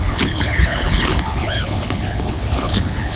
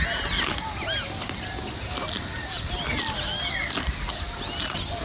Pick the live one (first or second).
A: second